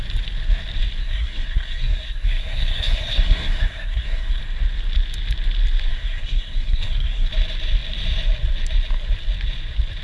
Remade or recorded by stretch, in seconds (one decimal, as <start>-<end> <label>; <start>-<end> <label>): 0.0-1.0 recorded; 1.0-4.4 remade; 4.4-5.9 recorded; 5.9-7.3 remade; 7.3-10.0 recorded